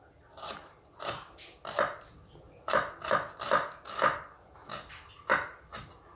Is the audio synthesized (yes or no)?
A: no